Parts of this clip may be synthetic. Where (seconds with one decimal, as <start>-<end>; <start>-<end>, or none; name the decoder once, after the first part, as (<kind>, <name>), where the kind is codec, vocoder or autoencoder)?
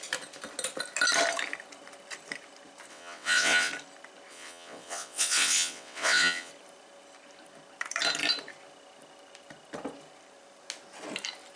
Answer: 2.9-3.7 (vocoder, WaveNeXt); 4.3-6.5